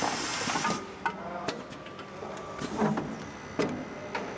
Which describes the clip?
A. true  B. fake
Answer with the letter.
A